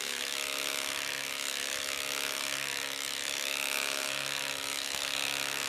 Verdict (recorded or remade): remade